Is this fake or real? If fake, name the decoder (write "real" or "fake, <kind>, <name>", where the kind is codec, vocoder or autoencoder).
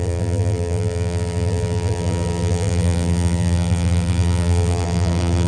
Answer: fake, vocoder, BigVGAN v2